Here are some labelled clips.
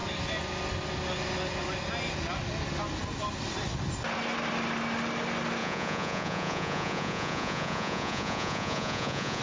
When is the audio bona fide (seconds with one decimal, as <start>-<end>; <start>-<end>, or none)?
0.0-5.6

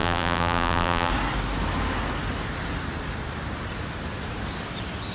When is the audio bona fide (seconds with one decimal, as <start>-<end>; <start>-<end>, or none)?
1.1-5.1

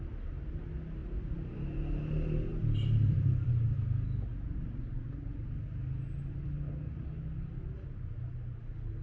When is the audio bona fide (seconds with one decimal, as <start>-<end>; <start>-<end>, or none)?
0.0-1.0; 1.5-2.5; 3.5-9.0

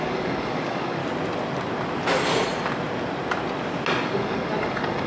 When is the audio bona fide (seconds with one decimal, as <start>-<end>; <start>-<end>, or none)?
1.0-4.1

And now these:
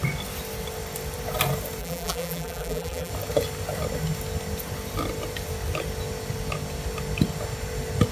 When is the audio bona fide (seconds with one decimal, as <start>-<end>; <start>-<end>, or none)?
0.0-1.8; 3.1-8.1

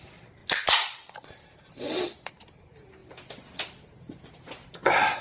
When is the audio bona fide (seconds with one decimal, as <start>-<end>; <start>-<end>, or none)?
0.0-5.2

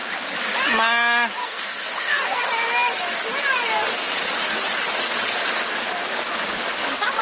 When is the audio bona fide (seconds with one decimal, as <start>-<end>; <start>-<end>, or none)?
0.0-1.4; 2.4-7.2